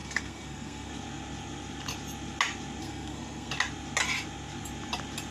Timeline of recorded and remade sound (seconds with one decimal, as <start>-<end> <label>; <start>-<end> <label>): 0.0-0.9 remade; 0.9-2.8 recorded; 2.8-3.5 remade; 3.5-5.3 recorded